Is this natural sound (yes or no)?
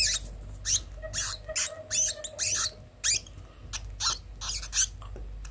yes